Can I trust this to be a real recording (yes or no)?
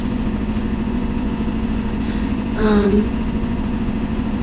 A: no